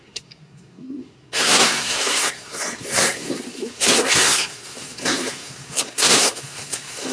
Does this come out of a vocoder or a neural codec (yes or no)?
yes